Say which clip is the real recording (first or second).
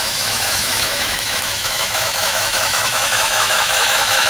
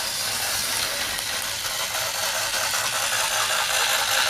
second